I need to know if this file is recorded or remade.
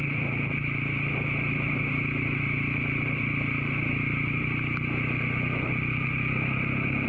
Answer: remade